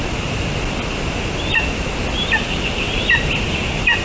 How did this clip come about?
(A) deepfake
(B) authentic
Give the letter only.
B